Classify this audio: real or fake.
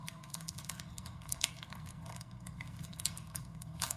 fake